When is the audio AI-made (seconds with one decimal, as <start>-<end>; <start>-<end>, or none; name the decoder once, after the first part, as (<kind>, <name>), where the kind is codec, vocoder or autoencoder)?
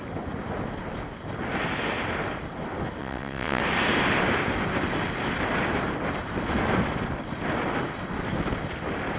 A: 3.0-3.6 (vocoder, WaveNeXt)